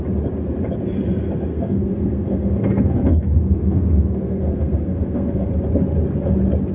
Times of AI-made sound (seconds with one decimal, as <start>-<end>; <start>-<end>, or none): 1.5-5.5